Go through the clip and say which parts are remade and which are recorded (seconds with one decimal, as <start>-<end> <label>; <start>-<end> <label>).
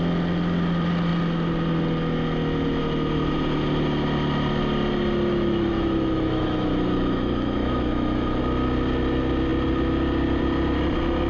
0.0-5.3 recorded; 5.3-8.4 remade; 8.4-11.3 recorded